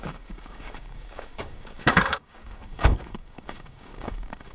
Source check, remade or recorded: remade